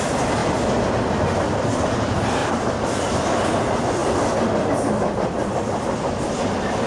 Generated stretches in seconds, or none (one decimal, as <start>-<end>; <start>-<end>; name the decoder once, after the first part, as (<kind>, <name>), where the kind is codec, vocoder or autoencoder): none